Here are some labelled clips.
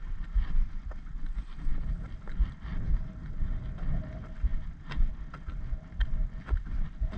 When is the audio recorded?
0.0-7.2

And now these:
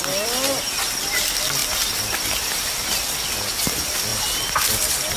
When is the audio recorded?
0.0-5.2